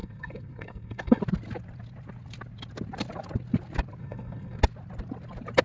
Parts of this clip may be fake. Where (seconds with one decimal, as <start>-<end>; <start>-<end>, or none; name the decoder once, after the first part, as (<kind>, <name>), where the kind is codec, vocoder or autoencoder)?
0.0-1.2 (codec, SNAC); 4.0-4.6